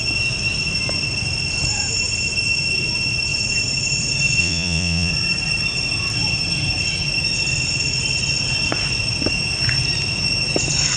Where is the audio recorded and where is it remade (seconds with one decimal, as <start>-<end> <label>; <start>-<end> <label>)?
0.0-4.4 recorded; 4.4-5.1 remade; 5.1-11.0 recorded